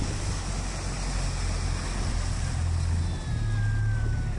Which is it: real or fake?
real